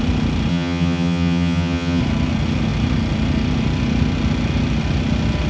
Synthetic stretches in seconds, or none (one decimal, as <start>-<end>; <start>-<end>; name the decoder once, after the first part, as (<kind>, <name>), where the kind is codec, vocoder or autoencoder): 0.5-2.0 (vocoder, HiFi-GAN)